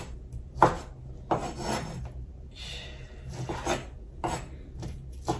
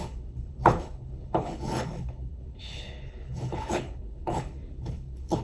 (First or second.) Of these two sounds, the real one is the first